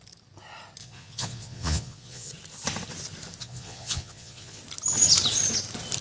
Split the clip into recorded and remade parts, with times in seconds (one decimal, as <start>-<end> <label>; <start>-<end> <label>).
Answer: 0.0-0.8 recorded; 0.8-2.3 remade; 2.3-3.4 recorded; 3.4-4.6 remade; 4.6-6.0 recorded